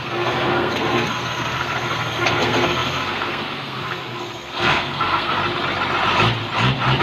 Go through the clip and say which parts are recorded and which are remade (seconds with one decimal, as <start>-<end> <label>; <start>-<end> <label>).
0.0-5.4 remade; 5.4-7.0 recorded